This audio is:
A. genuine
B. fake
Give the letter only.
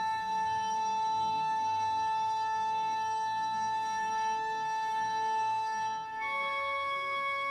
B